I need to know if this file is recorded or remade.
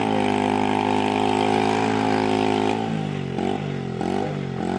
recorded